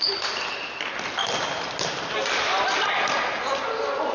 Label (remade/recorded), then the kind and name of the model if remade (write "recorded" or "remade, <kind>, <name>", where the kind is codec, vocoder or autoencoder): recorded